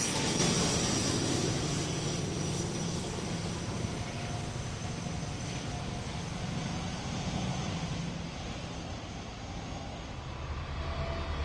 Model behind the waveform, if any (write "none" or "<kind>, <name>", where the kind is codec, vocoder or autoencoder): none